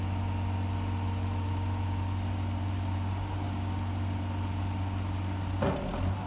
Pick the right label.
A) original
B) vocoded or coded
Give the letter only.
A